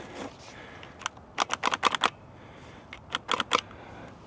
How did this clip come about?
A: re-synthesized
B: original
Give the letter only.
B